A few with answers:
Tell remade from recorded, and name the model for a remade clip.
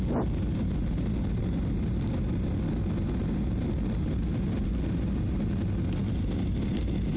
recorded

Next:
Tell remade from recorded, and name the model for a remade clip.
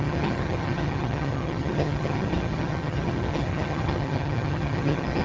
remade, vocoder, HiFi-GAN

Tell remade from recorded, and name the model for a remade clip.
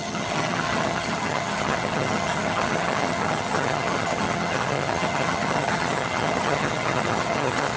remade, vocoder, HiFi-GAN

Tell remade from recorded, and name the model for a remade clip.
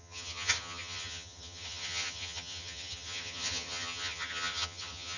remade, vocoder, HiFi-GAN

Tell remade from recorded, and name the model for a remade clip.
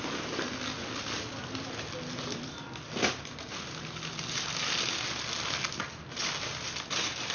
recorded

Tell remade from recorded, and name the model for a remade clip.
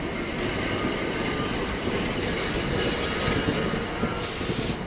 recorded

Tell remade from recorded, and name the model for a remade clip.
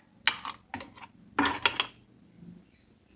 recorded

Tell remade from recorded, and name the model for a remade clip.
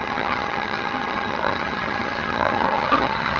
remade, vocoder, HiFi-GAN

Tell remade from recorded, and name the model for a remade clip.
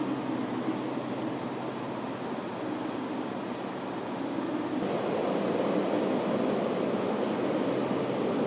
recorded